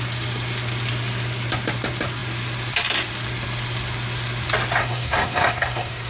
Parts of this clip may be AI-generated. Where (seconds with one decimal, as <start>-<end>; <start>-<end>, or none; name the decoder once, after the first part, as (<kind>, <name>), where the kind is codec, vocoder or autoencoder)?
4.8-6.1 (codec, SNAC)